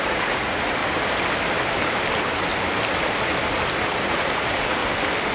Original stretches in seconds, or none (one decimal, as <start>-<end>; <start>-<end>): 0.8-4.0; 4.8-5.3